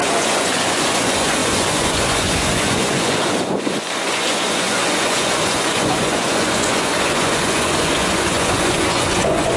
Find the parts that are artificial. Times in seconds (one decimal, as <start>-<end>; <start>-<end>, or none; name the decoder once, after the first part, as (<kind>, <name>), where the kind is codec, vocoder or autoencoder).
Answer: 0.0-9.6 (vocoder, Vocos)